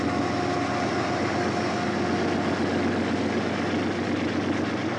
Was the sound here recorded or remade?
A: recorded